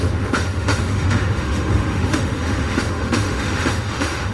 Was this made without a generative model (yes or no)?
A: no